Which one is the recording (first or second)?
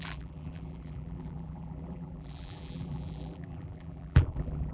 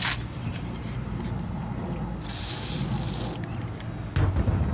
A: second